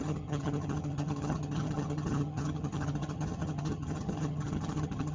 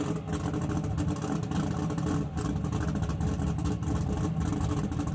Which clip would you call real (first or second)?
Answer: second